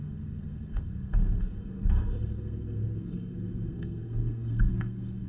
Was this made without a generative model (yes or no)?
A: no